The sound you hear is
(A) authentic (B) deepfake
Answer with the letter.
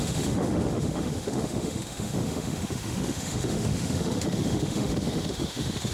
B